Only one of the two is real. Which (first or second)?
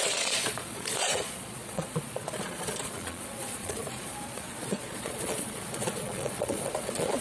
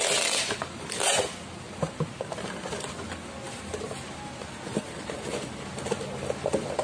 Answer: second